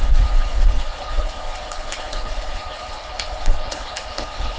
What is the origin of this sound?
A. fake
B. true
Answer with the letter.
A